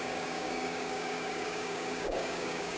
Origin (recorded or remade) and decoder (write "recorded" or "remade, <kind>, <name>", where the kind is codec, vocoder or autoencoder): remade, codec, DAC